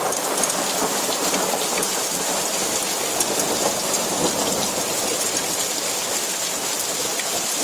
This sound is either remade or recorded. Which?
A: recorded